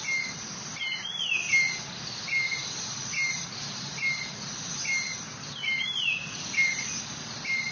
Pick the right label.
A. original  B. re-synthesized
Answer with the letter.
A